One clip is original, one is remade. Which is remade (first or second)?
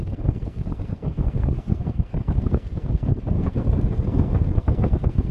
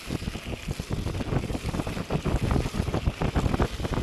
first